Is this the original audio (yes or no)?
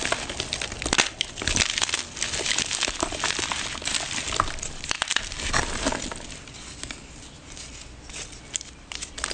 yes